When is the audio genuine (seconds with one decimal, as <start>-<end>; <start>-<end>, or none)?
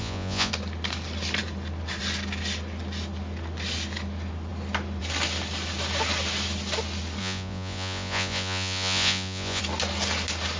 0.5-7.2; 9.6-10.6